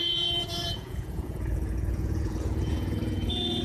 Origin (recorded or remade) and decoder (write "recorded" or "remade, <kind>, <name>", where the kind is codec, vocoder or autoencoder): remade, vocoder, Vocos